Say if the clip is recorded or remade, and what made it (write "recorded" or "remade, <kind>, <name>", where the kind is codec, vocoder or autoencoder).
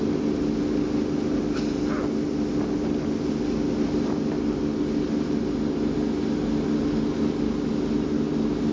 recorded